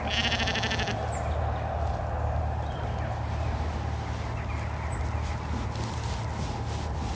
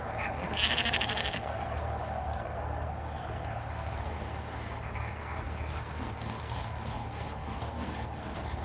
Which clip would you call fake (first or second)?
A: second